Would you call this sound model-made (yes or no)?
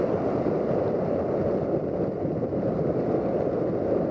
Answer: no